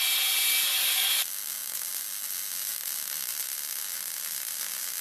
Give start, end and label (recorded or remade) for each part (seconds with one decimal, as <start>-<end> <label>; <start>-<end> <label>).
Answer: 0.0-5.0 recorded